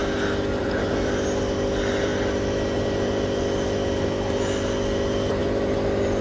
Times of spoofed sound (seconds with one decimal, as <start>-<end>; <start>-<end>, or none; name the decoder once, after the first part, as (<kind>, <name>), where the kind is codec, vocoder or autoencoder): none